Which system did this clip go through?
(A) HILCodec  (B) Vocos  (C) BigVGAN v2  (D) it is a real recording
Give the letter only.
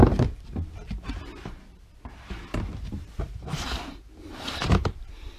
C